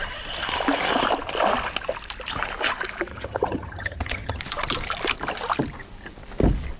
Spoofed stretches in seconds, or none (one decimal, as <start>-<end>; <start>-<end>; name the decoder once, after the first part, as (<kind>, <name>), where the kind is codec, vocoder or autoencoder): 3.1-4.4 (vocoder, HiFi-GAN)